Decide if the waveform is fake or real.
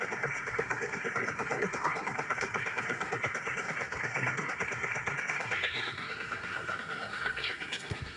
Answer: fake